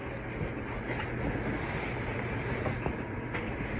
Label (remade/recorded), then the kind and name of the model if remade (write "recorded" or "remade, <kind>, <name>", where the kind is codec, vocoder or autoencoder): recorded